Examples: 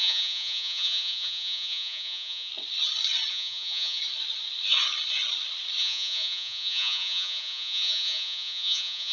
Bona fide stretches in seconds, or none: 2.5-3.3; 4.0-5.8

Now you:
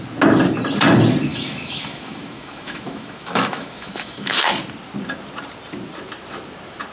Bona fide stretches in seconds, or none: 0.0-1.3; 4.6-6.9

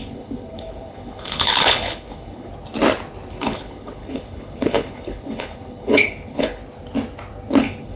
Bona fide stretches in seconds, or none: 2.5-3.3; 6.6-7.6